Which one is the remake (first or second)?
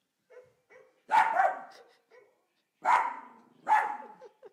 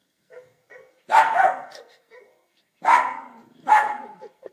second